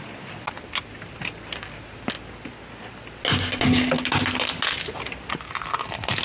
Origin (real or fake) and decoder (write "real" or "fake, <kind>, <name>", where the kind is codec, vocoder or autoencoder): real